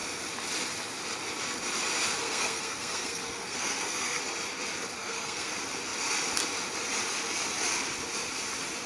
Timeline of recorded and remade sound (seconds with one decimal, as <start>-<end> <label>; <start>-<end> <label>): 0.0-2.2 recorded; 2.2-4.2 remade; 4.2-5.0 recorded; 5.0-5.5 remade; 5.5-8.9 recorded